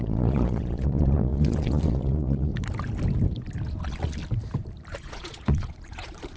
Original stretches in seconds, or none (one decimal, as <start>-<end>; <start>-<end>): 2.5-3.8; 4.2-4.9